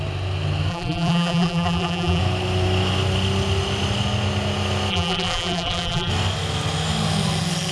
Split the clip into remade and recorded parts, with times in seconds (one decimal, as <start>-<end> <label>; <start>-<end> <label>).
0.0-0.7 recorded; 0.7-2.2 remade; 2.2-4.9 recorded; 4.9-6.1 remade; 6.1-7.7 recorded